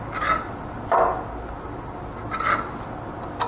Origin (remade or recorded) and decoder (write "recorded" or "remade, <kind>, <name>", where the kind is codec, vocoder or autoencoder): recorded